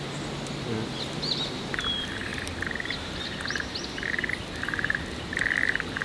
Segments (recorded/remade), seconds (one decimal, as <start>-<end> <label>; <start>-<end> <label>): 0.0-6.0 recorded

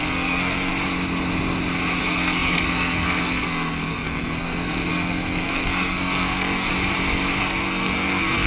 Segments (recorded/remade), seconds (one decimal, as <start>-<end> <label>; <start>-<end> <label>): 0.0-0.7 remade; 0.7-2.0 recorded; 2.0-6.7 remade; 6.7-7.4 recorded; 7.4-8.5 remade

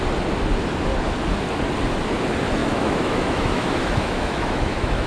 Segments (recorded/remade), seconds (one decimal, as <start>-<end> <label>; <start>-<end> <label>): 0.0-2.6 recorded; 2.6-5.1 remade

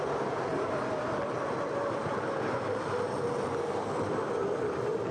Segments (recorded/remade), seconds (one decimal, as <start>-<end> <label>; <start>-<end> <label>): 0.0-5.1 recorded

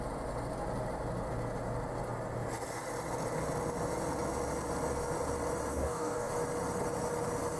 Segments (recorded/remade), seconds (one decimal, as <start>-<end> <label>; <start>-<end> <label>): 0.0-5.7 recorded; 5.7-6.3 remade; 6.3-7.6 recorded

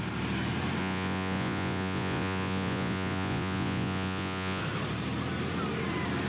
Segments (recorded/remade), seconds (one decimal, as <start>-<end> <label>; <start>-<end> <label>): 0.0-0.8 recorded; 0.8-4.6 remade; 4.6-6.3 recorded

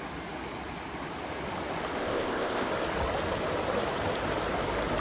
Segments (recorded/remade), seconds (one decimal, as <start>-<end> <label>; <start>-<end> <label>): 0.0-2.0 recorded; 2.0-2.7 remade; 2.7-5.0 recorded